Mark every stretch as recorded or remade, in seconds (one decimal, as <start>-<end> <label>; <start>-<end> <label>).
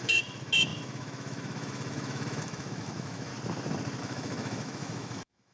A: 0.0-3.3 remade; 3.3-4.0 recorded; 4.0-5.5 remade